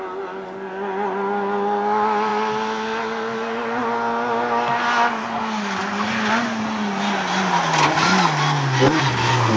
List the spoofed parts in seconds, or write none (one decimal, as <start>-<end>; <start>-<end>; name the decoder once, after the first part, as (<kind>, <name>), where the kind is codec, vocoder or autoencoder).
none